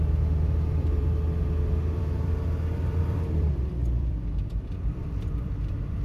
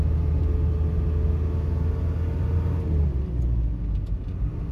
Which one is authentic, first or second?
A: second